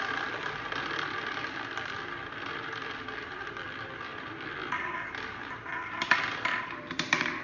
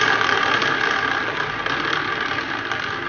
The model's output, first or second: first